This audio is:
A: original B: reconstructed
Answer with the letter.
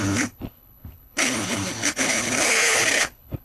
B